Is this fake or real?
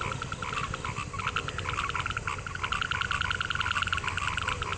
real